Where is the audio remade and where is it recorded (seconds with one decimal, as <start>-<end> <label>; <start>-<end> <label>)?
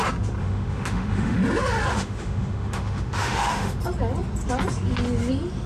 0.0-0.4 recorded; 0.4-1.4 remade; 1.4-1.9 recorded; 1.9-3.8 remade; 3.8-5.7 recorded